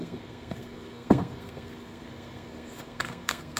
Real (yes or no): no